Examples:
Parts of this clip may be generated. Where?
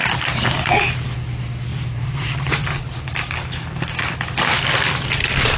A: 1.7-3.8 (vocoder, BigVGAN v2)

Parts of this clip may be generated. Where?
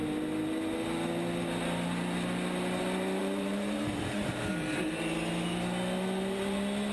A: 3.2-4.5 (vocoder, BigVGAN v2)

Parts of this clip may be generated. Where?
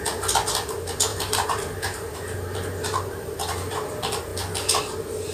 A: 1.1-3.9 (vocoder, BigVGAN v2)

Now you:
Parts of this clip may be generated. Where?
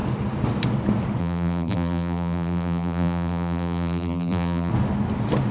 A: 1.2-4.7 (vocoder, BigVGAN v2)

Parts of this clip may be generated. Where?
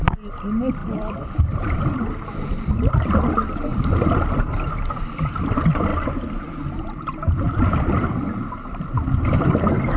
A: 0.8-2.0 (vocoder, BigVGAN v2); 5.9-8.1